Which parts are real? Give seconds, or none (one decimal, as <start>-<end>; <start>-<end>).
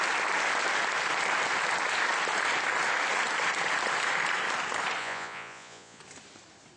0.0-5.0; 6.0-6.8